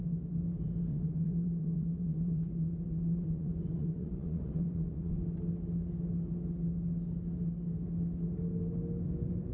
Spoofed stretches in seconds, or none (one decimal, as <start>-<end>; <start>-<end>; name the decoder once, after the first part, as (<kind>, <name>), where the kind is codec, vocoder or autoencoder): 0.9-5.1 (vocoder, Vocos)